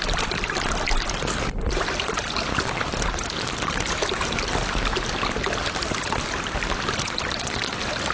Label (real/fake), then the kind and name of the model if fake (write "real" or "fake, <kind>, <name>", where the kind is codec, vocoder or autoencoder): fake, vocoder, BigVGAN v2